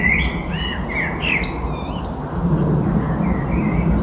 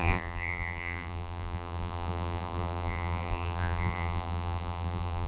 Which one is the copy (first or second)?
second